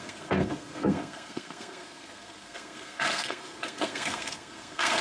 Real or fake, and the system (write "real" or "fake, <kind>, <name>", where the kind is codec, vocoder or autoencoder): fake, codec, SNAC